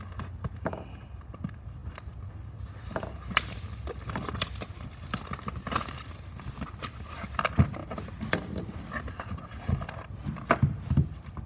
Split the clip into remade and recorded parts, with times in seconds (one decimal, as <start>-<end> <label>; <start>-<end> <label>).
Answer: 0.0-11.5 recorded

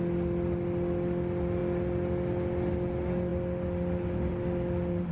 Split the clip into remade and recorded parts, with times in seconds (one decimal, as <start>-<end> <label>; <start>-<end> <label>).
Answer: 0.0-5.1 recorded

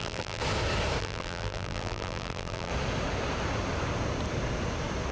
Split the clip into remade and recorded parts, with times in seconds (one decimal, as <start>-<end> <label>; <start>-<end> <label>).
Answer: 0.0-0.4 remade; 0.4-1.0 recorded; 1.0-2.7 remade; 2.7-5.1 recorded

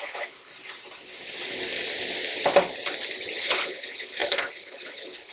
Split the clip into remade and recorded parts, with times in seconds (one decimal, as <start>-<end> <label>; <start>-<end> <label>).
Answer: 0.0-0.5 remade; 0.5-3.4 recorded; 3.4-5.3 remade

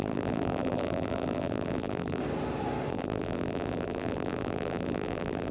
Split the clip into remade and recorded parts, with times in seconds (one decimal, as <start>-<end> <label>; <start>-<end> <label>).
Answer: 0.0-2.2 remade; 2.2-2.9 recorded; 2.9-5.5 remade

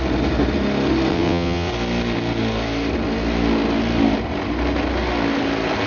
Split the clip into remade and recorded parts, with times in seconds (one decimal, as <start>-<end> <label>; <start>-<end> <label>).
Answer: 0.0-1.1 recorded; 1.1-1.7 remade; 1.7-5.9 recorded

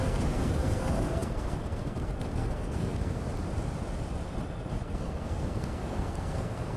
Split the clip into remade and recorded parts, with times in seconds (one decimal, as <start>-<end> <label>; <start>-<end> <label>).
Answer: 0.0-3.2 remade; 3.2-4.7 recorded; 4.7-6.8 remade